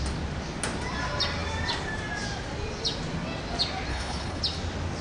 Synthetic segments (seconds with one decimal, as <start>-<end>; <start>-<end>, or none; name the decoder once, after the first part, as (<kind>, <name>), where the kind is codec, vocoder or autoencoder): 3.9-4.4 (codec, HILCodec)